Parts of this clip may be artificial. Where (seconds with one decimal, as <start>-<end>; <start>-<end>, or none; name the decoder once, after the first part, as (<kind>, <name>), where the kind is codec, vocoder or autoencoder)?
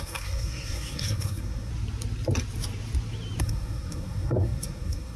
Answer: 0.0-1.7 (codec, SNAC); 3.4-5.2